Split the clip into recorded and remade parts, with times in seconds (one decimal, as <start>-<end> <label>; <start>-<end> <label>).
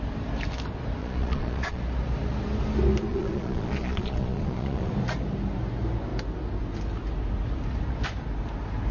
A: 0.0-1.0 recorded; 1.0-1.8 remade; 1.8-3.1 recorded; 3.1-4.9 remade; 4.9-8.9 recorded